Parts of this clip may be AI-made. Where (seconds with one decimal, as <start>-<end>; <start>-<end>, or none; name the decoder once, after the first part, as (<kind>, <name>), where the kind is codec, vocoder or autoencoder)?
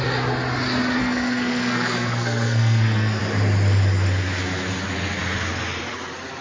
1.0-3.2 (codec, SNAC)